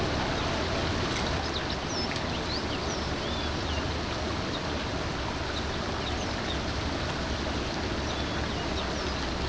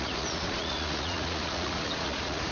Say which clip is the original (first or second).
first